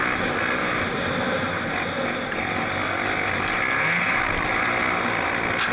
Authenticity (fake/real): real